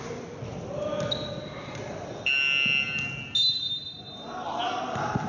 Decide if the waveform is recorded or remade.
recorded